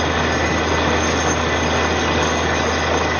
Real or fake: real